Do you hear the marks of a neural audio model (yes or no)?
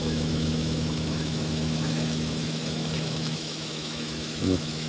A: yes